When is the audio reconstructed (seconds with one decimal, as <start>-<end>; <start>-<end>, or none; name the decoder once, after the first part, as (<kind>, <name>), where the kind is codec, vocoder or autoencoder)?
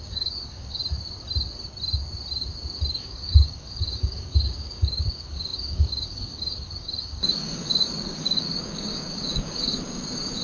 0.0-0.8 (codec, DAC); 3.0-10.4